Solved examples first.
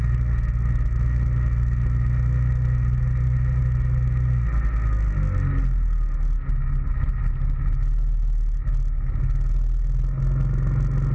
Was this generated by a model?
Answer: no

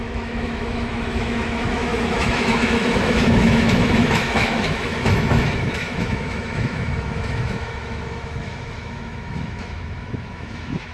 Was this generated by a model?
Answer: yes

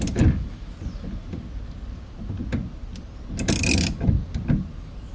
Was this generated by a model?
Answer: no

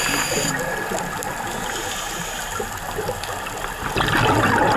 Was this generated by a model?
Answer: no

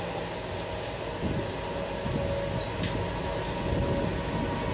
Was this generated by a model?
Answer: no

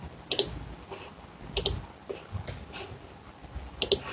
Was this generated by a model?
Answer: no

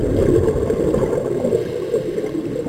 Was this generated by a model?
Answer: no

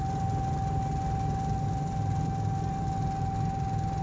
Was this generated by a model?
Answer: no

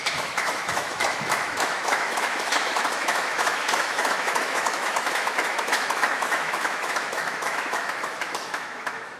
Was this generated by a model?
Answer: yes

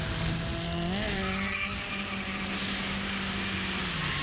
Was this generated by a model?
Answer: no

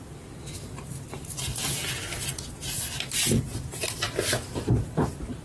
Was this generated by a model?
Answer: no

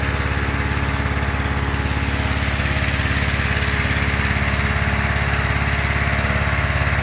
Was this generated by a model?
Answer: no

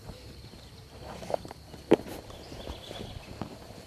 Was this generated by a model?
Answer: no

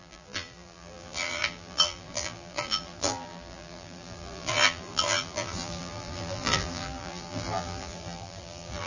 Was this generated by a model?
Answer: yes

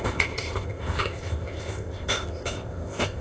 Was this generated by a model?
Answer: yes